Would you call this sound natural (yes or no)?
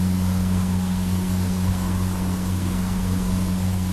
no